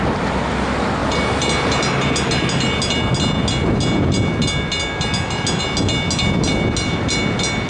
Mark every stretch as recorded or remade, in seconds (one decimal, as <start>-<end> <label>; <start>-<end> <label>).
0.0-7.7 recorded